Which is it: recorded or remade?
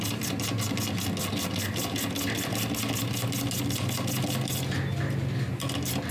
recorded